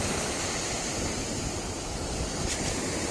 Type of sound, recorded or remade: recorded